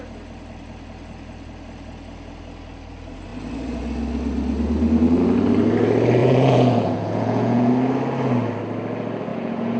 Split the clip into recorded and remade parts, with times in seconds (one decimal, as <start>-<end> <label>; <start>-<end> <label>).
0.0-6.2 recorded; 6.2-7.7 remade; 7.7-9.3 recorded; 9.3-9.8 remade